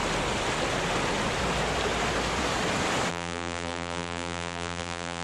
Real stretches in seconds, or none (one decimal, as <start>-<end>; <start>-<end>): 0.0-3.1